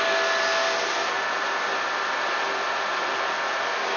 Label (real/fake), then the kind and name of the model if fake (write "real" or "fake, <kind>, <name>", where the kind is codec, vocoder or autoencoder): real